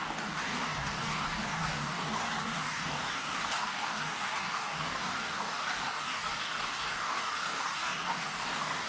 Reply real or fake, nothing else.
fake